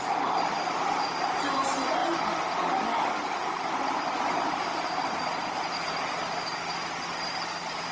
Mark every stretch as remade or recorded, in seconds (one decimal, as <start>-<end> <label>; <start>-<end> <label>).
0.0-7.9 recorded